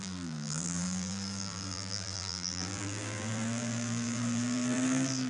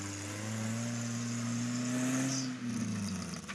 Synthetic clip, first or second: first